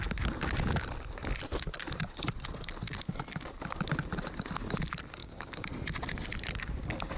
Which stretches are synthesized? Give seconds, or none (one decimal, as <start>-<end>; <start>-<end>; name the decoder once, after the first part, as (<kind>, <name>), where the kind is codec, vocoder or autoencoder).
5.2-5.7 (codec, DAC)